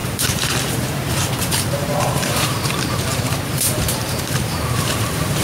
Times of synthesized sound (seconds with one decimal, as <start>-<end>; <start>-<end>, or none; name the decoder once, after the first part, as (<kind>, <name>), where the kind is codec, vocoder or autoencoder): 0.0-5.4 (vocoder, BigVGAN v2)